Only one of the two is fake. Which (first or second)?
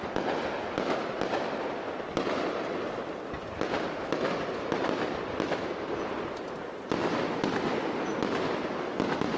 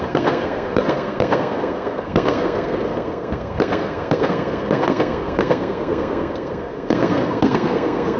second